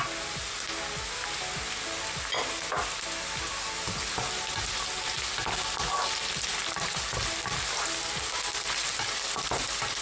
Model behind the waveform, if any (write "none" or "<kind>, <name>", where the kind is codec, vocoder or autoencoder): none